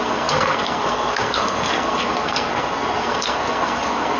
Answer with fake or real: fake